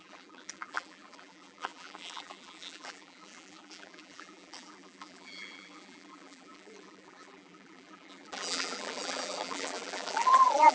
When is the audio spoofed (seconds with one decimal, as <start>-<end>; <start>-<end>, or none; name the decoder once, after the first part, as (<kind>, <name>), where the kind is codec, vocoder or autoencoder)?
0.0-10.7 (vocoder, BigVGAN v2)